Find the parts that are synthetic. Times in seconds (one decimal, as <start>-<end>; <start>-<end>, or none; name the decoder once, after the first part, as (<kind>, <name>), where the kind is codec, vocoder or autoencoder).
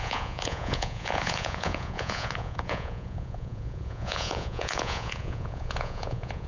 0.0-6.5 (vocoder, Vocos)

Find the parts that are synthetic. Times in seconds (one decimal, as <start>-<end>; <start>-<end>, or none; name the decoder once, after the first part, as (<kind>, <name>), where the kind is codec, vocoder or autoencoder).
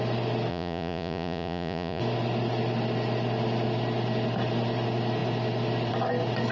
0.5-2.0 (vocoder, Vocos)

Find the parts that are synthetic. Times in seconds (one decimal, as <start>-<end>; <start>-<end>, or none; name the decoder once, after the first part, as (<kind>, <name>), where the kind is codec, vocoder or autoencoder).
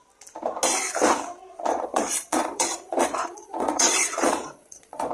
1.7-5.1 (vocoder, Vocos)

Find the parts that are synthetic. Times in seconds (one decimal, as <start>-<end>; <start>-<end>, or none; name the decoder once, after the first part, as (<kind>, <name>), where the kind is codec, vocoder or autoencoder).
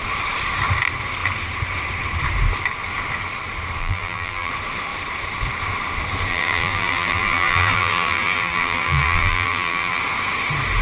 3.8-4.5 (vocoder, BigVGAN v2); 6.3-10.0